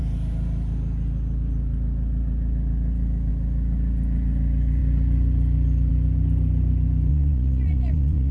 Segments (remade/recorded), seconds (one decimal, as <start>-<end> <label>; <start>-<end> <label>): 0.0-7.1 recorded; 7.1-8.3 remade